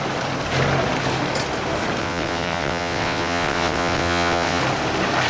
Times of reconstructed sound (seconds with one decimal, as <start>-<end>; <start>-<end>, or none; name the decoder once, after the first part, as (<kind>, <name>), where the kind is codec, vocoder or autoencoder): 2.0-4.6 (vocoder, WaveNeXt)